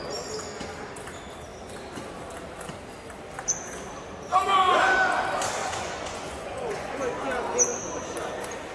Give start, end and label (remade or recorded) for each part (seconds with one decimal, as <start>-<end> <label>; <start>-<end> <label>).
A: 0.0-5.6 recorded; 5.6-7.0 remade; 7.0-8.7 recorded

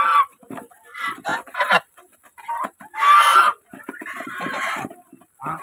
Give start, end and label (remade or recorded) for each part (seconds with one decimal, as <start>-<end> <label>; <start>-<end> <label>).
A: 0.0-1.3 recorded; 1.3-2.2 remade; 2.2-3.3 recorded; 3.3-5.6 remade

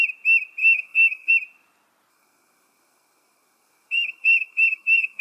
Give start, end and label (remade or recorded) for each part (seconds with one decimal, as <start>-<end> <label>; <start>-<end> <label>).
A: 0.0-0.6 recorded; 0.6-1.3 remade; 1.3-2.1 recorded; 2.1-5.2 remade

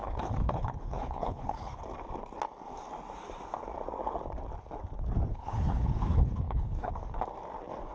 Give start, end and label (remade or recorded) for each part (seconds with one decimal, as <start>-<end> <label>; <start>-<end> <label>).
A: 0.0-1.8 remade; 1.8-5.3 recorded; 5.3-6.9 remade; 6.9-7.9 recorded

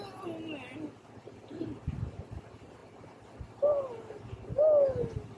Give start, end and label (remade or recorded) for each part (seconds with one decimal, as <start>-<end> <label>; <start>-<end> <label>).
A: 0.0-2.8 recorded; 2.8-3.8 remade; 3.8-5.4 recorded